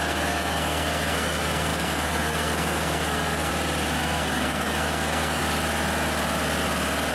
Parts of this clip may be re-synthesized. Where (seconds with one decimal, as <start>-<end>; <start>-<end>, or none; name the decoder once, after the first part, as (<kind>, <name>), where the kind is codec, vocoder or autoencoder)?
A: 0.0-3.5 (codec, SNAC); 4.0-5.4